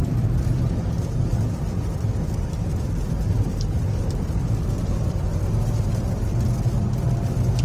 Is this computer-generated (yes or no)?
no